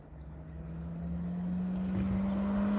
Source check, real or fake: real